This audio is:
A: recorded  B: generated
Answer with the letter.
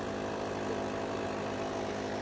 A